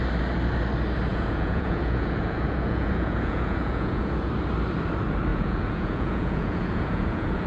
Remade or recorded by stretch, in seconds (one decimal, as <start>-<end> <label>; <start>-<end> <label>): 0.0-1.1 recorded; 1.1-4.3 remade; 4.3-5.3 recorded; 5.3-7.5 remade